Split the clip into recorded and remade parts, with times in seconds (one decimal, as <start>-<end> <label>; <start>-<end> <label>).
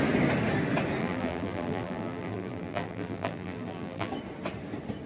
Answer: 0.0-1.0 recorded; 1.0-4.1 remade; 4.1-5.1 recorded